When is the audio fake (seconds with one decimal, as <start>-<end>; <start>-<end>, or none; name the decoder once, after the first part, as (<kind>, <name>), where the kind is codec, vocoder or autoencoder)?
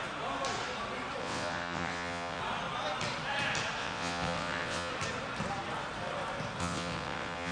1.2-2.4 (vocoder, WaveNeXt); 3.8-4.9; 6.6-7.5